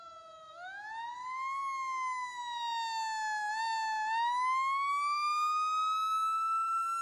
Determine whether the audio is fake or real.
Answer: real